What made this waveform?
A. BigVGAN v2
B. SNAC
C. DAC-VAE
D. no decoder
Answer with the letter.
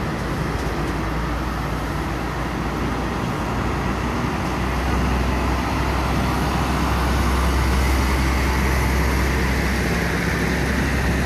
D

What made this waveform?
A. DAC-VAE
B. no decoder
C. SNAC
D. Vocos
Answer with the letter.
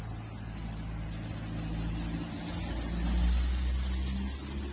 B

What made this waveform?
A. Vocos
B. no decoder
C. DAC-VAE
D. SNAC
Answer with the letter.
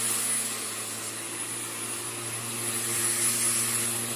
B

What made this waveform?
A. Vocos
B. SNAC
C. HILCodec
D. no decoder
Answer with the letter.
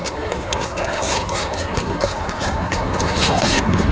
B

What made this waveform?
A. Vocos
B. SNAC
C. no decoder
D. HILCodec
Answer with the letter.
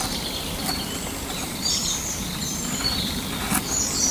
C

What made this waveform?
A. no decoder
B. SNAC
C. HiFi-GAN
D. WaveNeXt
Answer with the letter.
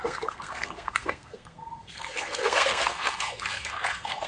B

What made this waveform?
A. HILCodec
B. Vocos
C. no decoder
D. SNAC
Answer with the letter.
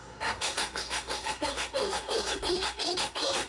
D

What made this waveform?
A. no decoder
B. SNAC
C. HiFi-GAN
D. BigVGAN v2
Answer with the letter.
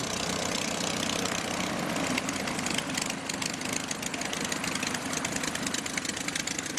A